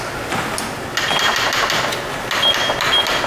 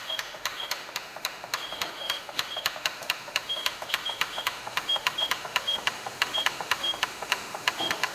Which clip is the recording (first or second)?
first